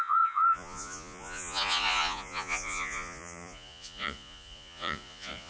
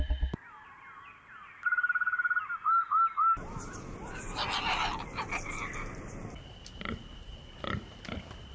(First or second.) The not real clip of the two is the first